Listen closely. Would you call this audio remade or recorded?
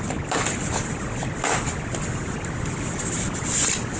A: recorded